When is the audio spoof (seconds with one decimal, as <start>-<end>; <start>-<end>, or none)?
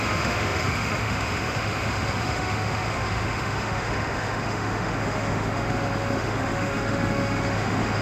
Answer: 0.0-8.0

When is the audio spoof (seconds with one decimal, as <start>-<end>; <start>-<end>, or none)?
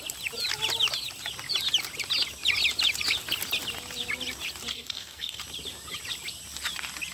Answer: 4.7-5.4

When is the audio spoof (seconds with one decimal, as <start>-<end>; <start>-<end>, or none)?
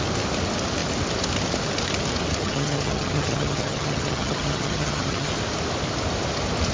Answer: 2.4-5.3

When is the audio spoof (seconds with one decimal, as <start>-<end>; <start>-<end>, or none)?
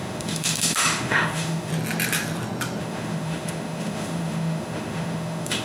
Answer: 0.0-1.7; 2.8-5.6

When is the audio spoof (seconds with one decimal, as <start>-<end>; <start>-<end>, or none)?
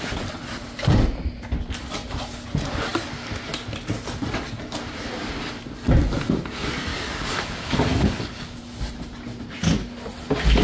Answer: 6.9-8.6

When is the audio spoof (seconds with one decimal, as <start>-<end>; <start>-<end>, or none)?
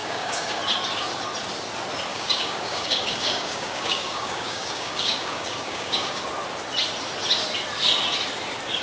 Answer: 0.0-0.6; 2.1-6.2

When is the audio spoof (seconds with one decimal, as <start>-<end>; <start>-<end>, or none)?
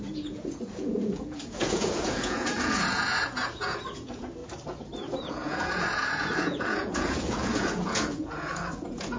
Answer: 0.0-4.4; 5.3-9.2